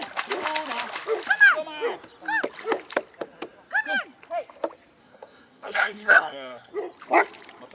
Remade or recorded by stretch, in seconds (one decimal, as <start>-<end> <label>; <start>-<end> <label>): 0.0-5.0 recorded; 5.0-6.7 remade; 6.7-7.7 recorded